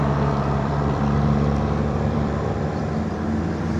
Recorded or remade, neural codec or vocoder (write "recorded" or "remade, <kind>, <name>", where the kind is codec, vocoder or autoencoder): remade, vocoder, BigVGAN v2